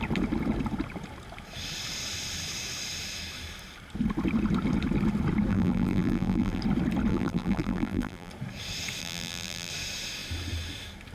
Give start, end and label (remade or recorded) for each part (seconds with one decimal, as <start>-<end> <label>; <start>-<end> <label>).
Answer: 0.0-5.5 recorded; 5.5-6.6 remade; 6.6-7.1 recorded; 7.1-8.3 remade; 8.3-9.0 recorded; 9.0-9.7 remade; 9.7-11.1 recorded